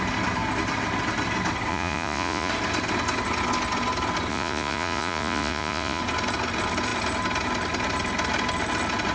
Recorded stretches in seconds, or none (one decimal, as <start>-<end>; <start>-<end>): 0.0-1.7; 2.5-4.3; 6.0-9.1